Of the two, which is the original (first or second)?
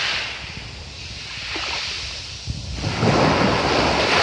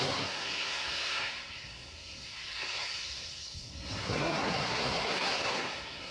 first